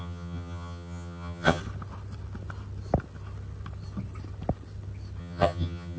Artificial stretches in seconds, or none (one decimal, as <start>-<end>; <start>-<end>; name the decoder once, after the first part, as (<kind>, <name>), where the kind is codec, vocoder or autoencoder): 0.0-1.6 (vocoder, HiFi-GAN); 5.2-6.0